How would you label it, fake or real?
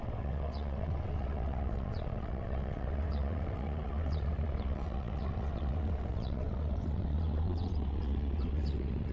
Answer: fake